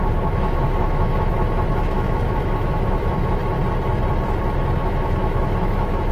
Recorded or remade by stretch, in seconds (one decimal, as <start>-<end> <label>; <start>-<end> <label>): 0.0-3.4 remade; 3.4-4.9 recorded; 4.9-6.1 remade